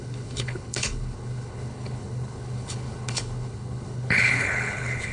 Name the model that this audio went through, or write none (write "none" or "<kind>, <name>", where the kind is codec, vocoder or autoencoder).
codec, HILCodec